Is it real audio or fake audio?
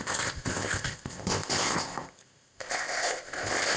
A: fake